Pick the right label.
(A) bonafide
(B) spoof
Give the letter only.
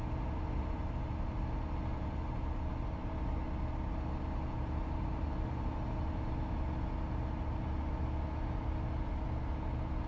A